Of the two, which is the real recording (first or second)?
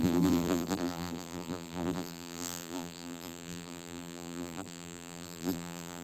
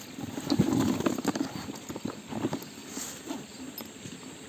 second